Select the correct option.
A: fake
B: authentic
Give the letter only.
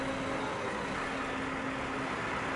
B